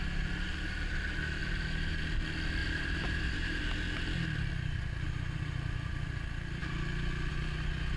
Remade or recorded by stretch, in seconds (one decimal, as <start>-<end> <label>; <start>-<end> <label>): 0.0-1.4 recorded; 1.4-2.0 remade; 2.0-2.6 recorded; 2.6-3.6 remade; 3.6-8.0 recorded